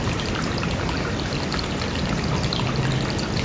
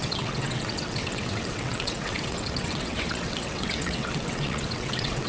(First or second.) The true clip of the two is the first